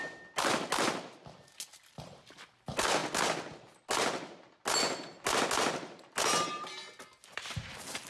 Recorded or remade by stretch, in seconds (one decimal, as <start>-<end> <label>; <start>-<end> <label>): 0.0-8.1 recorded